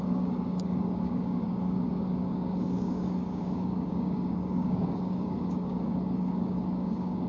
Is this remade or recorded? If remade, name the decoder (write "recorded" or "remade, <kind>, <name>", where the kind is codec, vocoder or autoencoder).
remade, codec, DAC